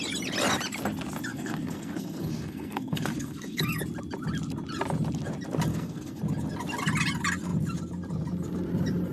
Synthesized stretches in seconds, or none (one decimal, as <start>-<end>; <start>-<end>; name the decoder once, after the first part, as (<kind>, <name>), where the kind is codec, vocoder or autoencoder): 1.3-3.8 (codec, SNAC); 5.7-6.2